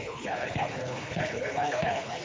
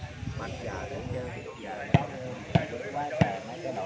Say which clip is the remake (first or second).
first